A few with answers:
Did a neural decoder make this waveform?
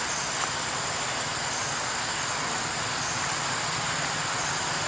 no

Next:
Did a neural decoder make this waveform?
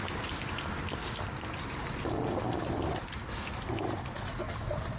no